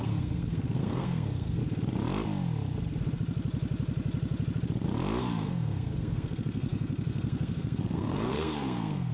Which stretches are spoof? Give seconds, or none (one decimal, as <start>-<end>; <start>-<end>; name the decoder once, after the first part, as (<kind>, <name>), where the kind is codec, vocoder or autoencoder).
0.0-1.6 (codec, SNAC); 5.2-9.1